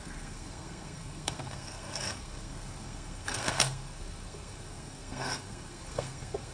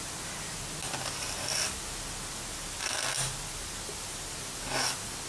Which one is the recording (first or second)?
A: second